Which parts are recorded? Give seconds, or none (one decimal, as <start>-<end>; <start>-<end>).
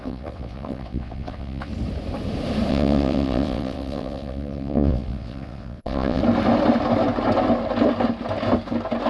1.7-2.7; 6.2-9.1